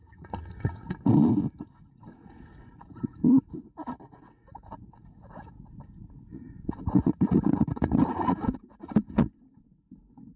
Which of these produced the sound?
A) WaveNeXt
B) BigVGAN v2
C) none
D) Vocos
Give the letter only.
D